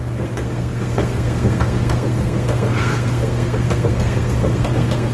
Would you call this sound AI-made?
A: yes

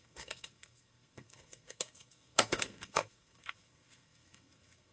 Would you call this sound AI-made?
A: yes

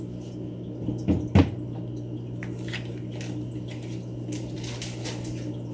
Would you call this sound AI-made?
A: no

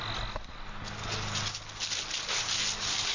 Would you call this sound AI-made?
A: no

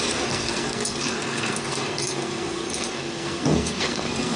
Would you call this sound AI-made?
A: yes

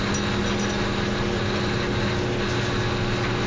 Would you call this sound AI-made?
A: no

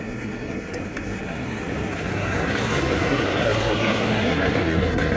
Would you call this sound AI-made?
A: yes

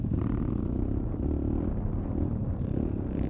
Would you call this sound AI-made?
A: no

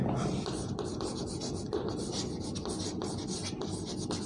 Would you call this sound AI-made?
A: no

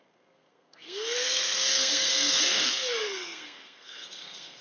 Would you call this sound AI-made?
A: yes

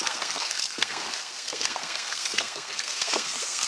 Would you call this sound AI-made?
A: yes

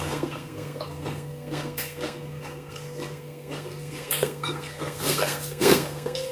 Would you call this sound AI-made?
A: yes